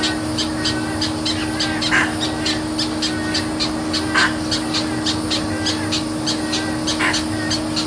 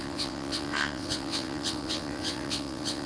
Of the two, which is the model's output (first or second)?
second